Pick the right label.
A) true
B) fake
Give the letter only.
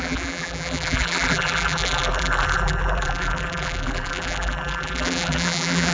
B